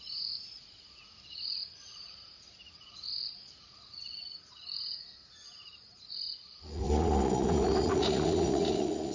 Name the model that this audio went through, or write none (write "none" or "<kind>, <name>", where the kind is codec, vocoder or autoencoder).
vocoder, Vocos